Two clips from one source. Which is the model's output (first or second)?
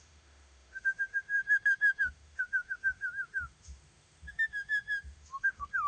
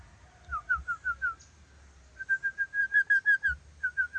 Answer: first